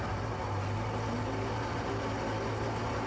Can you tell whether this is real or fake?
real